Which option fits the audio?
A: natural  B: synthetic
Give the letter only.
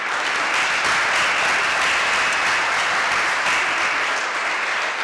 A